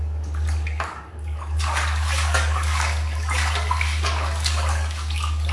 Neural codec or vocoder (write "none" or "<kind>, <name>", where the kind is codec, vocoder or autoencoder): codec, DAC